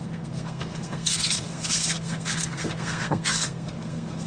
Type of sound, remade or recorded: remade